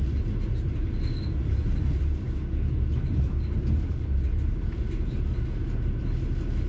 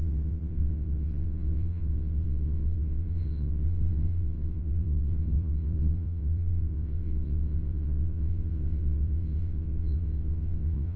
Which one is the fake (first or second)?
second